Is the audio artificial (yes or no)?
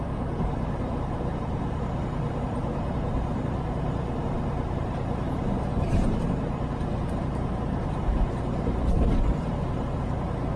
yes